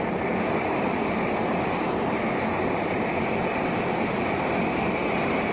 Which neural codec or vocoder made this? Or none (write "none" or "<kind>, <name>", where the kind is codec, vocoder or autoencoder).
none